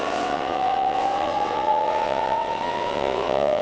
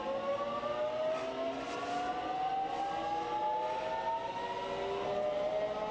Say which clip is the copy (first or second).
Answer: first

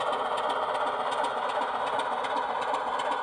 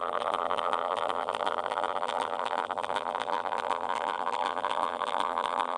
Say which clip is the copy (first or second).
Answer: second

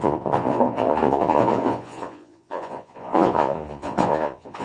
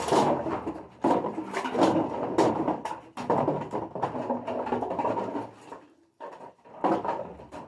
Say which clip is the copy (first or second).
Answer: first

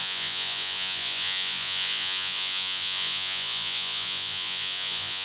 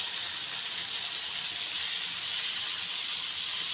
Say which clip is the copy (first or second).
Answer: first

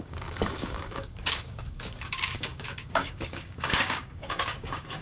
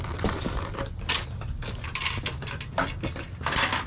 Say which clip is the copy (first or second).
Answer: first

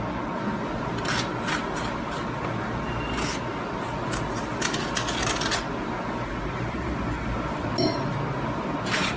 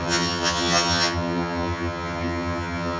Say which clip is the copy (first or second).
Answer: second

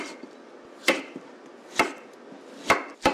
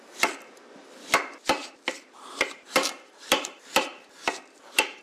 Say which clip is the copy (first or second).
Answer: second